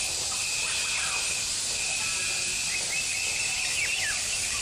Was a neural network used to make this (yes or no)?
no